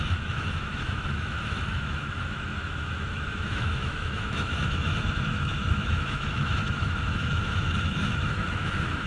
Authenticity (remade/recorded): remade